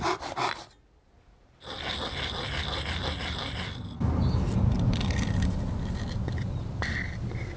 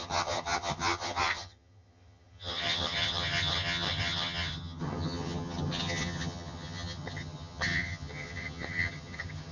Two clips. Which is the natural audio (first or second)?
first